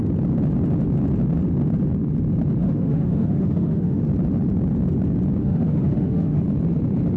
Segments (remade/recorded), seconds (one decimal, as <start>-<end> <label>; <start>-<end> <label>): 0.0-2.6 recorded; 2.6-4.0 remade; 4.0-5.4 recorded; 5.4-6.4 remade; 6.4-7.2 recorded